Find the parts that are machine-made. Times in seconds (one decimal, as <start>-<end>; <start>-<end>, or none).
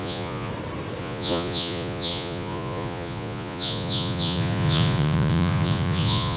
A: 0.0-0.5; 1.0-6.4